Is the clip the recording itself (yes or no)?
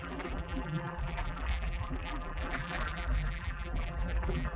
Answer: no